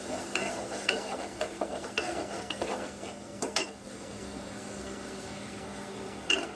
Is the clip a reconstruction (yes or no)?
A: yes